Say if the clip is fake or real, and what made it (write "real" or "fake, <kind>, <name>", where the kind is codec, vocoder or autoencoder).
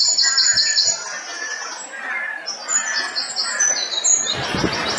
real